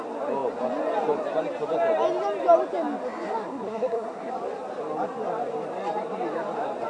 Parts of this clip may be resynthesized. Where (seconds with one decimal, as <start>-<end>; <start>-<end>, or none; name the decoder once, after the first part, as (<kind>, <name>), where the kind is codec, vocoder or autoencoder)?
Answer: 3.4-4.3 (codec, SNAC)